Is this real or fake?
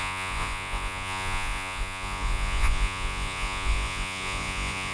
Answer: fake